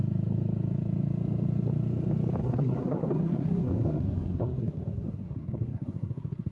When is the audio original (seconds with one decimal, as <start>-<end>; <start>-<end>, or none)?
0.0-2.4